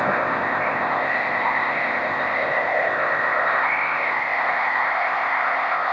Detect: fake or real fake